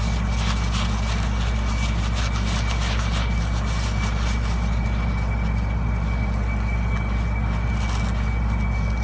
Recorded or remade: recorded